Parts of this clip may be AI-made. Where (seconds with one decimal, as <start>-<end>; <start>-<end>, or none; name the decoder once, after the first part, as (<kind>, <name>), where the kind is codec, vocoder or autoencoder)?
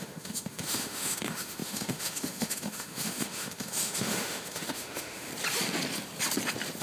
0.0-5.3 (autoencoder, DAC-VAE)